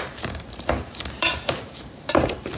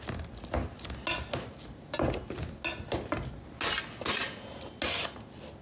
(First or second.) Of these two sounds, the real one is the second